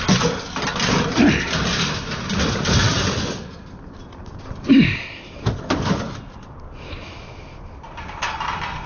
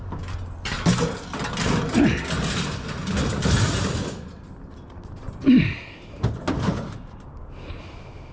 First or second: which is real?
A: second